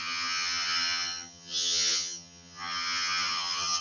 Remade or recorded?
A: remade